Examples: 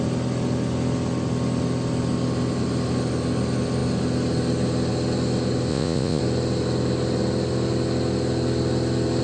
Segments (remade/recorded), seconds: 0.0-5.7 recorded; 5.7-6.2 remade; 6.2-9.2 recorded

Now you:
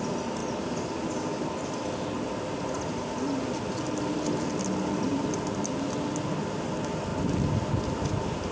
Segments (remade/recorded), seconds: 0.0-8.5 recorded

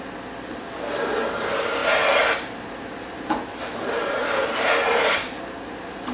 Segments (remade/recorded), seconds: 0.0-1.8 recorded; 1.8-5.4 remade; 5.4-6.1 recorded

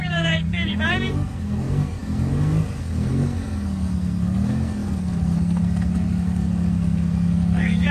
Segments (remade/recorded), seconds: 0.0-7.9 remade

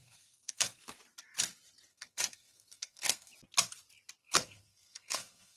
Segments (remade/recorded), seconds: 0.0-0.8 remade; 0.8-1.9 recorded; 1.9-3.3 remade; 3.3-4.2 recorded; 4.2-5.6 remade

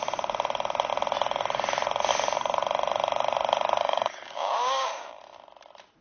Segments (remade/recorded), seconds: 0.0-3.8 recorded; 3.8-5.2 remade; 5.2-6.0 recorded